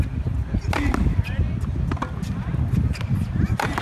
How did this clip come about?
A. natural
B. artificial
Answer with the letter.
A